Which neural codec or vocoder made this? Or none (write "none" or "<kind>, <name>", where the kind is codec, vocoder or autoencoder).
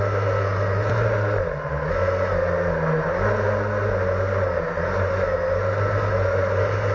none